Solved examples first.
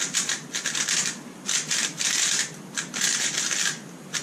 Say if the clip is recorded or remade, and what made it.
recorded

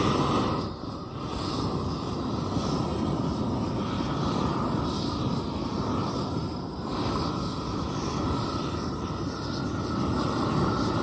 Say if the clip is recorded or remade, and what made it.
recorded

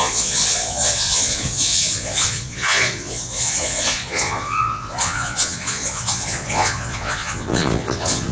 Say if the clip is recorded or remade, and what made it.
remade, vocoder, Vocos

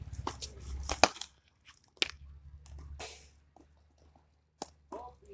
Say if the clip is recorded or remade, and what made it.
recorded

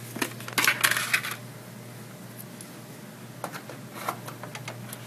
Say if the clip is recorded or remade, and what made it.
recorded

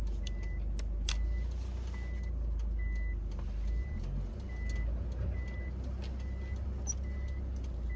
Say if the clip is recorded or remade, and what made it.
recorded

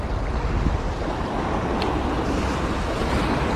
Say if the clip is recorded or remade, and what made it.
recorded